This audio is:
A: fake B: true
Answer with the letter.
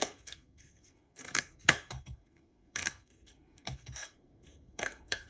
A